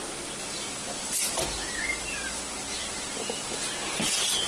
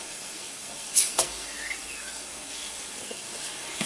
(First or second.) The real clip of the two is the first